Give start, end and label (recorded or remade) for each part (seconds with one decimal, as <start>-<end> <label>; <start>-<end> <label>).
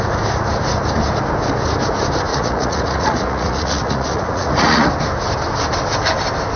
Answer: 0.0-2.3 recorded; 2.3-4.9 remade; 4.9-6.6 recorded